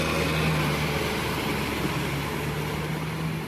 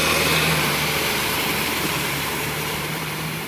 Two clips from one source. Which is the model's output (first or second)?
second